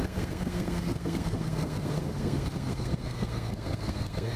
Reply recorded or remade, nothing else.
remade